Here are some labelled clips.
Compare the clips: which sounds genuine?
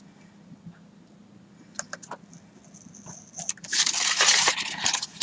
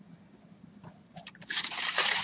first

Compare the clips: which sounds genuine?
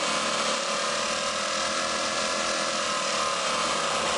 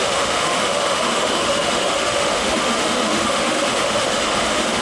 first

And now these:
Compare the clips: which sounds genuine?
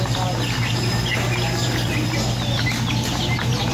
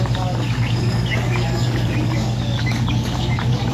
first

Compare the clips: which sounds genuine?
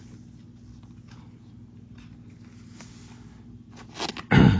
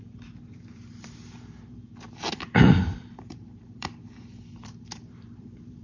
first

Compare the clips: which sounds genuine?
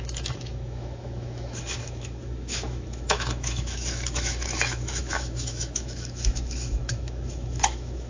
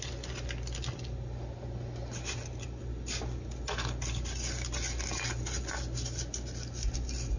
second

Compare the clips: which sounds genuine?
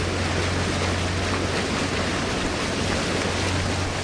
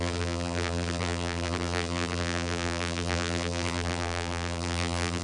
first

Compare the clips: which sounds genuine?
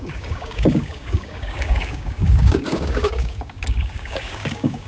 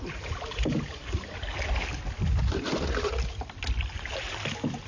second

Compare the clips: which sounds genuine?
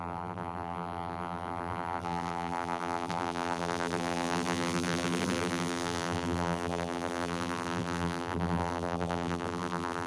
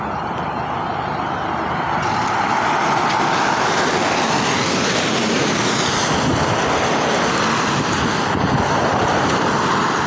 second